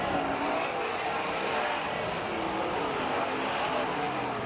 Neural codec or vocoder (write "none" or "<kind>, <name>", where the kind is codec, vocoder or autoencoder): none